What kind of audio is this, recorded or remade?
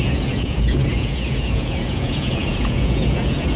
remade